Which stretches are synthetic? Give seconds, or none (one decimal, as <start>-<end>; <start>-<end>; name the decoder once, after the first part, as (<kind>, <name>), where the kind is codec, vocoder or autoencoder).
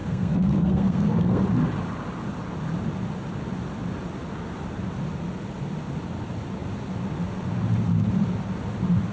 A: 0.0-1.4 (codec, SNAC)